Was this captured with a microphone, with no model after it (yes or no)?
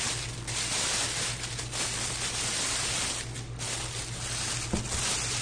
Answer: yes